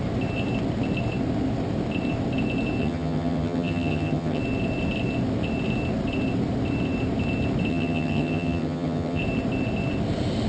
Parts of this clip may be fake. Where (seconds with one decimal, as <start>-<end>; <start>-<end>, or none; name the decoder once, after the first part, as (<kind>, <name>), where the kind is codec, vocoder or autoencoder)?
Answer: 2.8-4.4 (vocoder, HiFi-GAN); 7.7-9.2

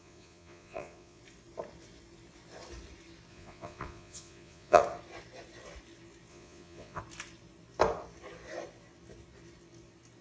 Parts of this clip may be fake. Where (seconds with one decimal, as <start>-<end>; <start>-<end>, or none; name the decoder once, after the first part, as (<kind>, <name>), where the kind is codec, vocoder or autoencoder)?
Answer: 0.0-1.2 (vocoder, Vocos); 3.3-4.8; 6.3-7.0

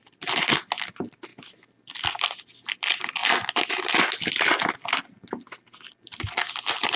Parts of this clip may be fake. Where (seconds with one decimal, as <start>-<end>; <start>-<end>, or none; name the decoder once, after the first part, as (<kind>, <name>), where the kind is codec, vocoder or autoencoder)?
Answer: 0.0-0.5 (vocoder, BigVGAN v2); 3.2-4.0

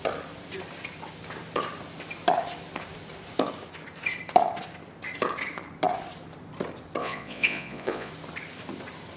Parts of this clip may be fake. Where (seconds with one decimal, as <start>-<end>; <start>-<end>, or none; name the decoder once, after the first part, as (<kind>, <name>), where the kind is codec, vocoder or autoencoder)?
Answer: 7.0-8.1 (vocoder, Vocos)

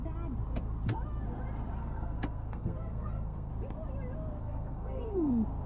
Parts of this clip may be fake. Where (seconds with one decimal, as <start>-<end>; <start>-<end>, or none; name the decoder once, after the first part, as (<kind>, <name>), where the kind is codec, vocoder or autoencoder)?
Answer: 1.8-3.5 (codec, SNAC); 4.4-5.3

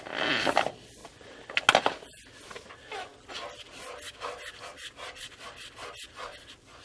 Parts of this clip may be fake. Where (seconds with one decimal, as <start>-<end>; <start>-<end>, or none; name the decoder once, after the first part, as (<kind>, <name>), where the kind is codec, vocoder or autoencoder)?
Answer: none